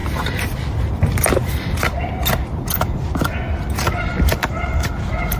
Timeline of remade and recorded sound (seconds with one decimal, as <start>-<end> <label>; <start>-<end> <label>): 0.0-5.4 recorded